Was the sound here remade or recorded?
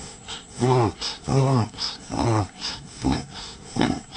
remade